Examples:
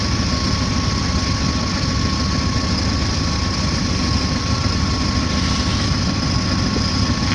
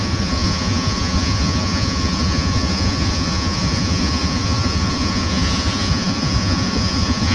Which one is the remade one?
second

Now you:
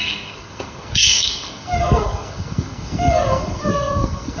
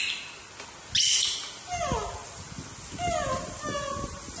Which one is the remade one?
first